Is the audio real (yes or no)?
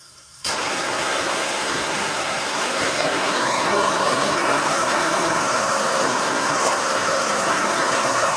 no